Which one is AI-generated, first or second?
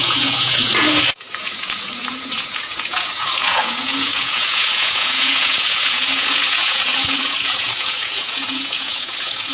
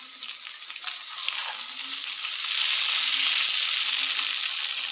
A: first